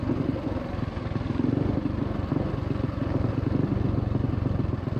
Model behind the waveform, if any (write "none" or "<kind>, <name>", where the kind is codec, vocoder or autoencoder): none